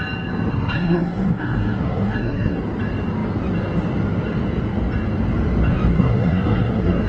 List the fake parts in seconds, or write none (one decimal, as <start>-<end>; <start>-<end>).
0.5-2.6; 5.9-7.1